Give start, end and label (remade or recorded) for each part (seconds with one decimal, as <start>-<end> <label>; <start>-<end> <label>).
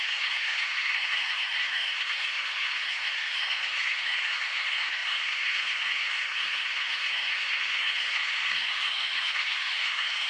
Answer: 0.0-10.3 remade